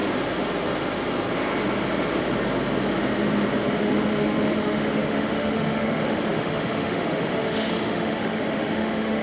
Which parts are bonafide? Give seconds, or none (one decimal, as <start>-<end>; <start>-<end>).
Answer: 0.0-3.8